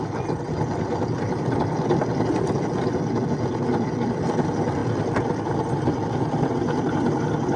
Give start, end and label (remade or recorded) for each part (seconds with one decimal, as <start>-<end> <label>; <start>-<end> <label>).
0.0-7.6 recorded